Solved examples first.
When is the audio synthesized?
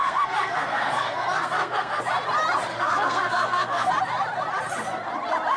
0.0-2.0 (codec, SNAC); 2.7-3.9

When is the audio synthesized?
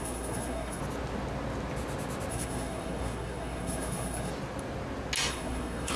0.0-0.8 (codec, SNAC); 2.3-4.3; 5.3-6.0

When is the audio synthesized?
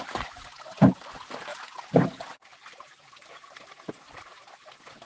none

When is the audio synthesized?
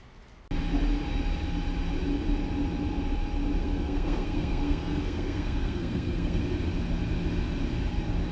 3.6-6.4 (codec, SNAC)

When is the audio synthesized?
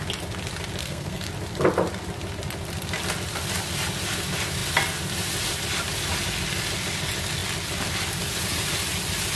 0.8-1.3 (codec, SNAC)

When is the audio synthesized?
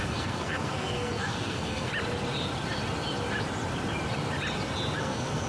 0.0-1.9 (codec, SNAC); 5.0-5.5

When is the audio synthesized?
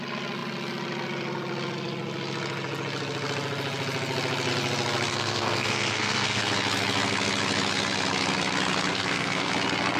5.1-6.4 (codec, SNAC); 8.9-9.5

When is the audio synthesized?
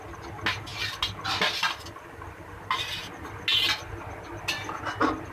none